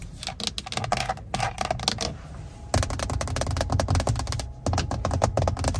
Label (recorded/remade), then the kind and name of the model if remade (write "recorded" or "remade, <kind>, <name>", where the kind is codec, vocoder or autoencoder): recorded